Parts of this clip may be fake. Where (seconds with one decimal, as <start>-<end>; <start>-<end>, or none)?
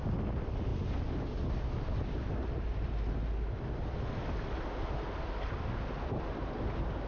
none